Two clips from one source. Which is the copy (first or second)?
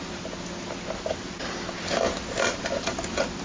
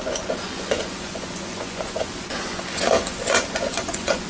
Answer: second